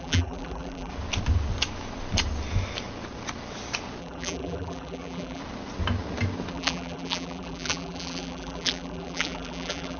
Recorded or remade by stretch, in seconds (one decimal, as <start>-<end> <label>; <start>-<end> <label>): 0.0-0.9 remade; 0.9-4.0 recorded; 4.0-5.4 remade; 5.4-6.5 recorded; 6.5-10.0 remade